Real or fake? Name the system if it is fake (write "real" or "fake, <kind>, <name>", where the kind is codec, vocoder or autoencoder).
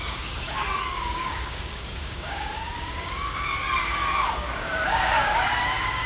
fake, codec, DAC